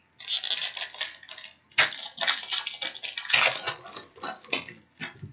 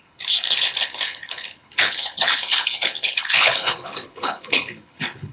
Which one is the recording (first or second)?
first